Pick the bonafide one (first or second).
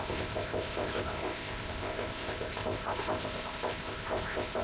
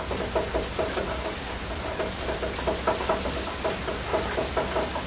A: second